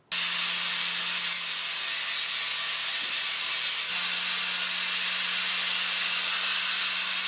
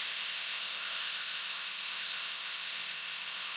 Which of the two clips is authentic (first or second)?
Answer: first